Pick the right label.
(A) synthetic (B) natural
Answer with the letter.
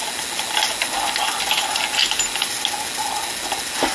B